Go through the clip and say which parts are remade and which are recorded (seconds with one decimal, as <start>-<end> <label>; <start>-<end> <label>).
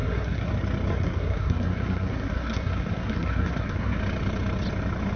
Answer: 0.0-0.5 remade; 0.5-0.9 recorded; 0.9-4.0 remade; 4.0-5.2 recorded